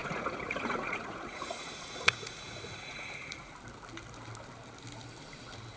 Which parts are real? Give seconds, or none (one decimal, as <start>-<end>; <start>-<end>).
3.5-5.8